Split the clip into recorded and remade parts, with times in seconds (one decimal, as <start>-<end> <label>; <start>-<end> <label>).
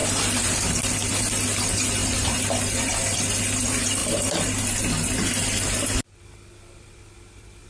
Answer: 0.0-1.2 remade; 1.2-2.0 recorded; 2.0-3.4 remade; 3.4-4.0 recorded; 4.0-5.8 remade; 5.8-7.7 recorded